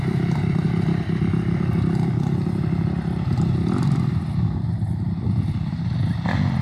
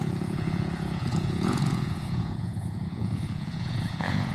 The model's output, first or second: second